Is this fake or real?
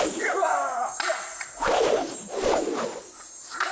real